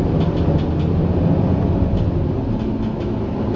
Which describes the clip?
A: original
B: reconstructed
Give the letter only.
A